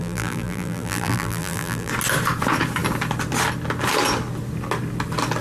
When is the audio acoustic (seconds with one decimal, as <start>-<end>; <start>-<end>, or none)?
1.9-5.4